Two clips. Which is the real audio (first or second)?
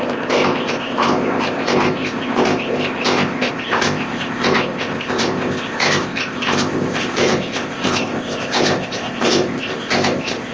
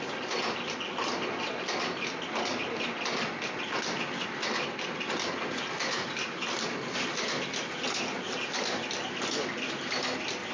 second